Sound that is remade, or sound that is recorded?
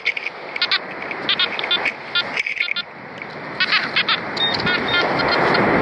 recorded